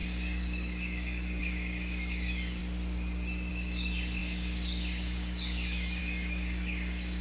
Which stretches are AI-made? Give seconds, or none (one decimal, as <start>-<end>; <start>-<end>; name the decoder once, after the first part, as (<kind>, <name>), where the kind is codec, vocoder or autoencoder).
0.0-2.6 (codec, DAC); 3.5-7.2